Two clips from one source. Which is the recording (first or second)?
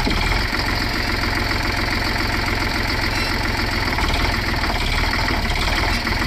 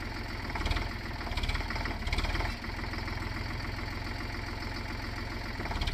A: second